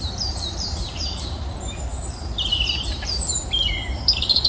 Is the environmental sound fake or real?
fake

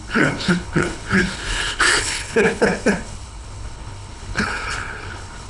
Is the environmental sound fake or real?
fake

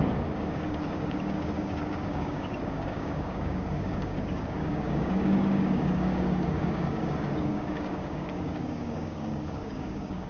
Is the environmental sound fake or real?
fake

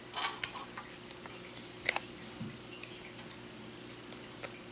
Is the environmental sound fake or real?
real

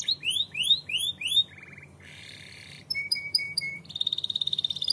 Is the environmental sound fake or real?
real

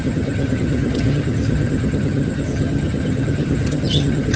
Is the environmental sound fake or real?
fake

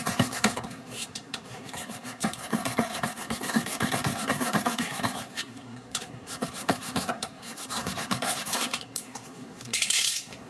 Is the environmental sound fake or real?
fake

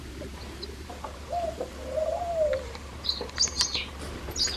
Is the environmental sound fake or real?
fake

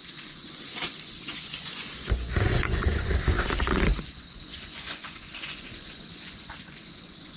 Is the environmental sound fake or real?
fake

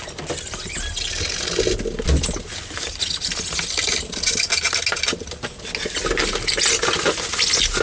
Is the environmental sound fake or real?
real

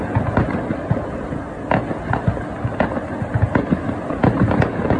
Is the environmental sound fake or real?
real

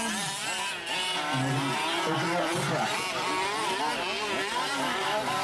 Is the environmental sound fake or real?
real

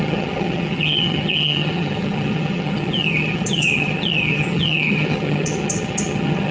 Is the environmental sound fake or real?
fake